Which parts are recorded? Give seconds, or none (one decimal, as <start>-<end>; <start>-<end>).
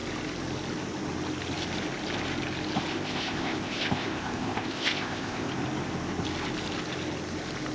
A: 0.0-2.9; 5.5-7.7